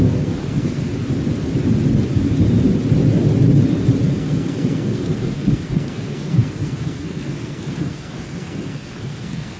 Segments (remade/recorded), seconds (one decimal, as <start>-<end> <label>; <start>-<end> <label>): 0.0-0.9 remade; 0.9-4.1 recorded; 4.1-9.6 remade